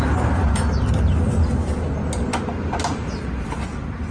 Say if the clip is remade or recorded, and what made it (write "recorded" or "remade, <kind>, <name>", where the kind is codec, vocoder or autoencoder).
recorded